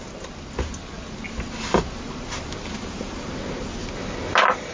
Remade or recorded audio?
recorded